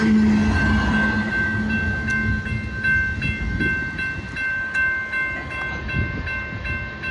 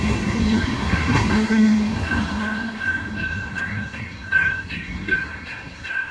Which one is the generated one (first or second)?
second